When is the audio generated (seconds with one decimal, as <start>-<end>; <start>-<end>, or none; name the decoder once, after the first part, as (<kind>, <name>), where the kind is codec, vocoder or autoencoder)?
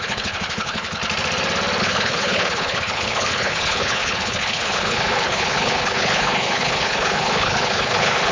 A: 0.0-1.0 (codec, HILCodec); 1.8-8.3